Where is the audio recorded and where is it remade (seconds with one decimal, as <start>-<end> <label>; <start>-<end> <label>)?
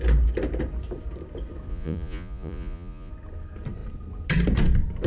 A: 0.0-1.7 recorded; 1.7-3.1 remade; 3.1-5.1 recorded